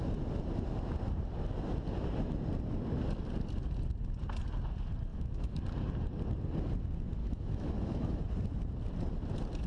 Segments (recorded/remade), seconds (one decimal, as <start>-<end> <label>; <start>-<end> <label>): 0.0-5.1 recorded; 5.1-5.6 remade; 5.6-7.2 recorded; 7.2-8.2 remade; 8.2-9.7 recorded